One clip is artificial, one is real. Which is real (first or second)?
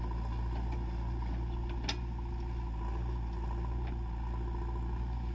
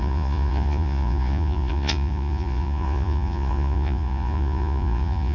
first